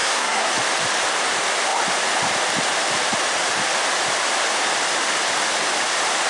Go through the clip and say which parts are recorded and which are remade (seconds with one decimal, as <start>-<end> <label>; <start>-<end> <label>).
0.0-0.5 remade; 0.5-6.3 recorded